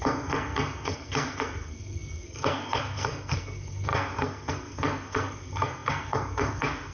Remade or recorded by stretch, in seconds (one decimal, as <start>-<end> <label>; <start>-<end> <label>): 0.0-6.9 remade